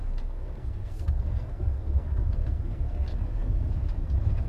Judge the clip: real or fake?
fake